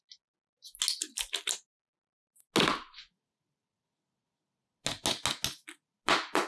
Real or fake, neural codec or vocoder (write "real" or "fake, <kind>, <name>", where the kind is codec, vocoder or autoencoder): real